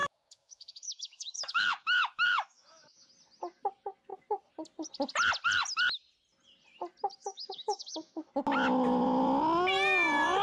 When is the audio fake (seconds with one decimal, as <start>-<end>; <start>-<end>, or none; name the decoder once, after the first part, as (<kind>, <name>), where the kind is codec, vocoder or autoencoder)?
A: 0.0-3.1 (autoencoder, DAC-VAE); 7.2-8.3